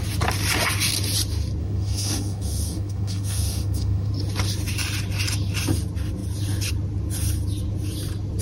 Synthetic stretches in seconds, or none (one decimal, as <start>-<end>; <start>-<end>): 1.6-4.1